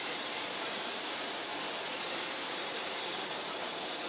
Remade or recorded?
remade